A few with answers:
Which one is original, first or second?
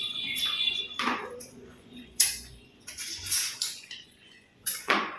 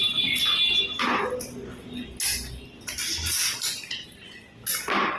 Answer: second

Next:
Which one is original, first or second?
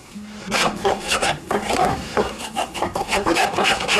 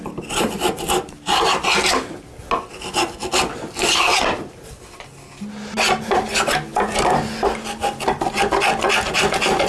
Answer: second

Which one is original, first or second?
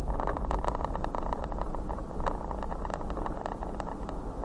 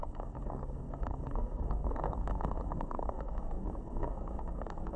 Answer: first